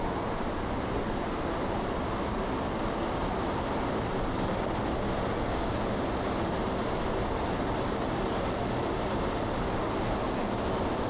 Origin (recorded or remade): recorded